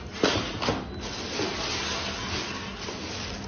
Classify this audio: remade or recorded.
recorded